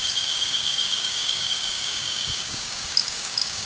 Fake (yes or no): yes